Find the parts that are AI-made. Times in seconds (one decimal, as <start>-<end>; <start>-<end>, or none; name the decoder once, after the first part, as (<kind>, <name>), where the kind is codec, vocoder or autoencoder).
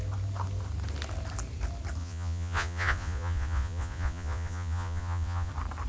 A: 2.0-5.5 (vocoder, Vocos)